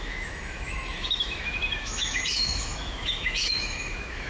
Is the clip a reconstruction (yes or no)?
yes